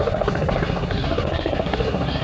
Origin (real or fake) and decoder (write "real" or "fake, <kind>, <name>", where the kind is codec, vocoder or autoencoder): fake, codec, SNAC